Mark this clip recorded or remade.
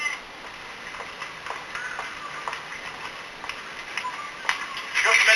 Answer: recorded